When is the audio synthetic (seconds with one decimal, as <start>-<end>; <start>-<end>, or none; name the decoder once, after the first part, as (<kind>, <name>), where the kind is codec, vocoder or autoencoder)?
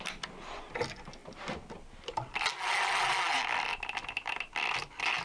none